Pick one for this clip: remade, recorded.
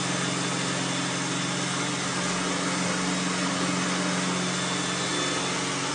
recorded